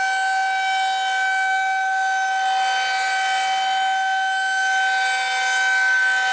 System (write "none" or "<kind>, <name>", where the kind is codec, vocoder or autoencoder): none